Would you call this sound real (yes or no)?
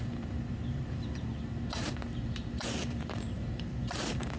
no